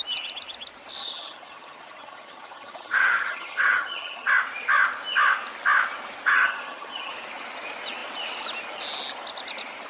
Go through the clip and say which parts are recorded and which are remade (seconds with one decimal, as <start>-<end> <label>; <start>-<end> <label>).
0.0-1.0 recorded; 1.0-4.3 remade; 4.3-6.3 recorded; 6.3-7.1 remade; 7.1-9.9 recorded

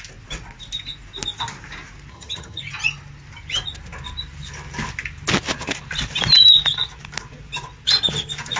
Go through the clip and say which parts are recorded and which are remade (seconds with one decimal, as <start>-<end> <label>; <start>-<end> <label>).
0.0-2.1 recorded; 2.1-2.6 remade; 2.6-8.6 recorded